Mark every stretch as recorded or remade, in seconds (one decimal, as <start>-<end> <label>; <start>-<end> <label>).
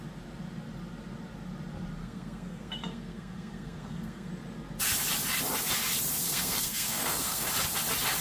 0.0-2.0 recorded; 2.0-4.3 remade; 4.3-6.2 recorded; 6.2-7.5 remade; 7.5-8.2 recorded